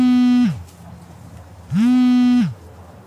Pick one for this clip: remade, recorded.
recorded